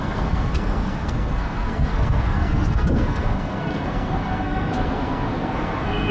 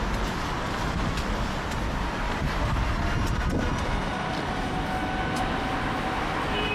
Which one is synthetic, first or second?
first